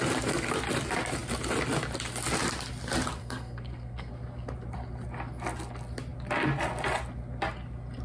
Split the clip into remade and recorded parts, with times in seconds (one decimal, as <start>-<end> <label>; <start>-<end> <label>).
0.0-3.2 recorded; 3.2-4.1 remade; 4.1-8.0 recorded